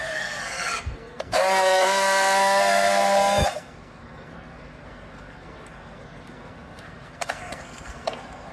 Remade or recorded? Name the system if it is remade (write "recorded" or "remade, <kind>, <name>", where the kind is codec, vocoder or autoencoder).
remade, codec, SNAC